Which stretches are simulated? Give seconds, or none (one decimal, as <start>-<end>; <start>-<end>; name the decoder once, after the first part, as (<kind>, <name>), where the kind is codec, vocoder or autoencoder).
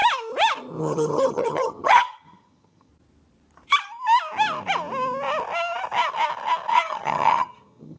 0.8-2.9 (vocoder, HiFi-GAN); 6.7-8.0